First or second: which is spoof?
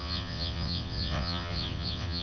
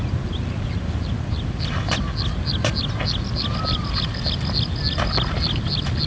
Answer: first